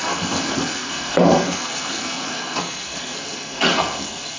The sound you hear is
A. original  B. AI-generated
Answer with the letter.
B